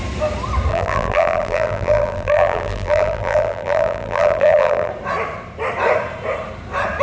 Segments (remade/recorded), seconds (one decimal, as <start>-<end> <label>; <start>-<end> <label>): 0.0-0.7 recorded; 0.7-4.9 remade; 4.9-7.0 recorded